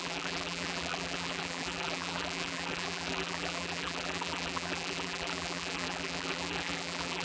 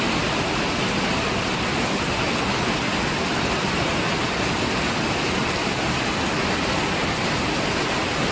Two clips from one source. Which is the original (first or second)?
second